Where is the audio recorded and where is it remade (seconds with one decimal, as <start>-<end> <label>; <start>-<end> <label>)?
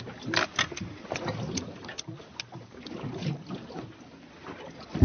0.0-5.0 recorded